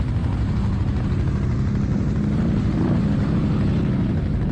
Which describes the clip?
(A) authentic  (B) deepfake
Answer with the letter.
A